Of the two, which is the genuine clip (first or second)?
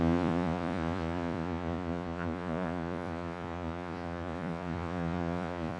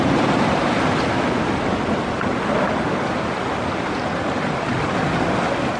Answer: second